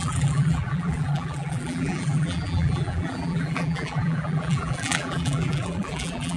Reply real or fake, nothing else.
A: fake